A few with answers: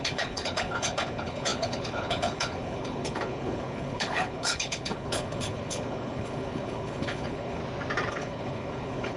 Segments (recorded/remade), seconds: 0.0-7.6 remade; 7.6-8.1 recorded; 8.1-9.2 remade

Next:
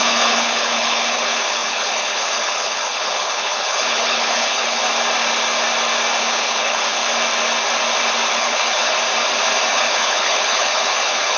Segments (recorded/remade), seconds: 0.0-4.8 remade; 4.8-6.2 recorded; 6.2-7.1 remade; 7.1-8.3 recorded; 8.3-8.9 remade; 8.9-9.7 recorded; 9.7-11.4 remade

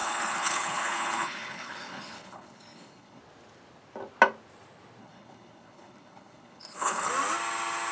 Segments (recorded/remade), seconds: 0.0-3.2 remade; 3.2-5.0 recorded; 5.0-7.1 remade; 7.1-7.9 recorded

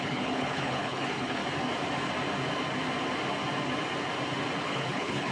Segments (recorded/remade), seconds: 0.0-1.4 remade; 1.4-4.6 recorded; 4.6-5.3 remade